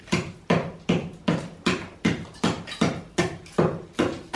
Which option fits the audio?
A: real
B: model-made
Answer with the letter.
A